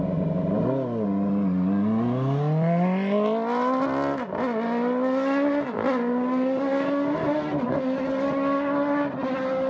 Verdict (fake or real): real